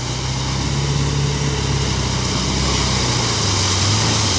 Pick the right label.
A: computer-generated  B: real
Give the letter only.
B